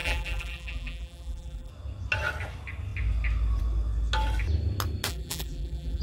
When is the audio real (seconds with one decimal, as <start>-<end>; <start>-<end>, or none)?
1.7-5.1